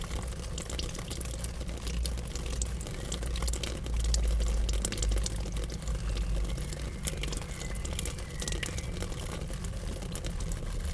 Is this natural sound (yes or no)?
yes